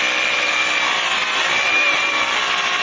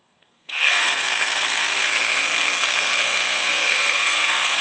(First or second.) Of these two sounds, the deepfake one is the second